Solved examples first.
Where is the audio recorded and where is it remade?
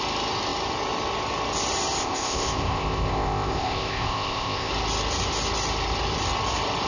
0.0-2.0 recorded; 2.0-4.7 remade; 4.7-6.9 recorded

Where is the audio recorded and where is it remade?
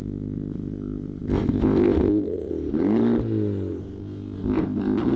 0.0-2.5 remade; 2.5-3.8 recorded; 3.8-5.2 remade